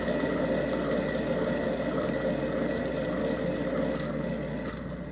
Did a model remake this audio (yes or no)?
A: no